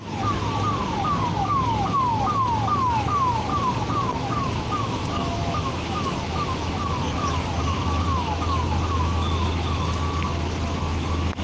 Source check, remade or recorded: remade